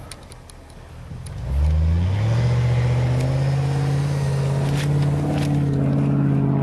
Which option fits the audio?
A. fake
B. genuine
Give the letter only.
B